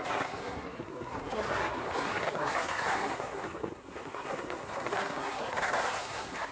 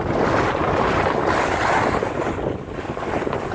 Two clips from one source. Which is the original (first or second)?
second